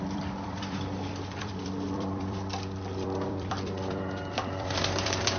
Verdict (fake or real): fake